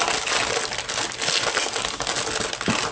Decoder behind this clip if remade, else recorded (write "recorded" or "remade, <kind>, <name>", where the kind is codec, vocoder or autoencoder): recorded